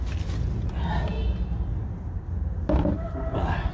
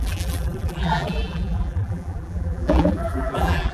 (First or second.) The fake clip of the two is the second